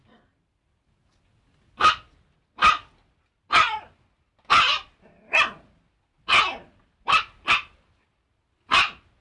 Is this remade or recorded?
recorded